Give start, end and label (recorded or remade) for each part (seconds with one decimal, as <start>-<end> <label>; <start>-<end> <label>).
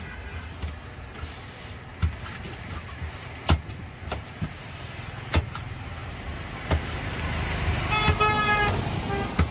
0.0-9.5 recorded